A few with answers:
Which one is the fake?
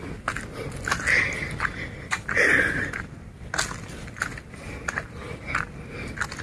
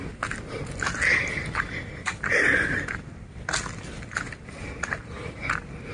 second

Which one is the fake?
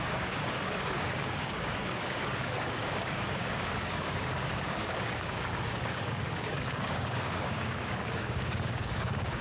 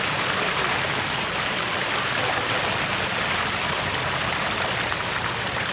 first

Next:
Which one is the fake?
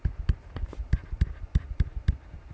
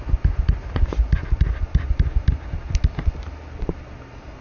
first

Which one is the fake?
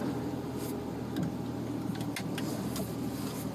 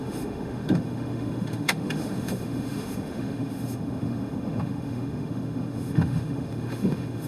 second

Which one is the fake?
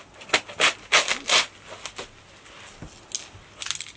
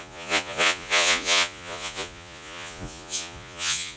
second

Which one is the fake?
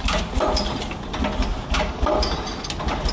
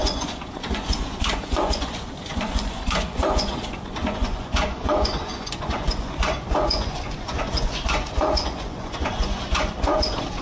second